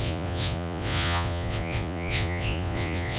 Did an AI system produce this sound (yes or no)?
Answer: yes